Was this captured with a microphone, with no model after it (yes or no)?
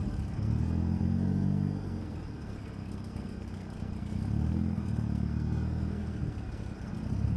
no